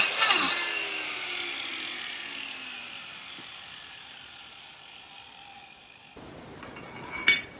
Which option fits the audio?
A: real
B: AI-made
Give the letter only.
A